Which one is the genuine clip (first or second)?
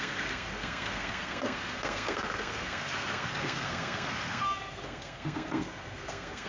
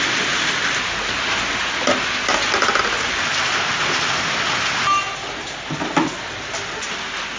second